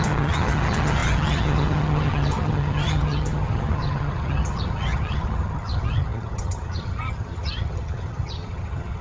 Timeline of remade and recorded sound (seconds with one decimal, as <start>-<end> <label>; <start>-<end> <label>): 0.0-9.0 remade